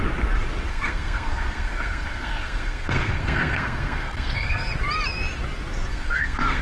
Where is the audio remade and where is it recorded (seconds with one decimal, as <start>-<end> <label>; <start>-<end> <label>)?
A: 0.0-0.7 recorded; 0.7-4.7 remade; 4.7-5.9 recorded; 5.9-6.6 remade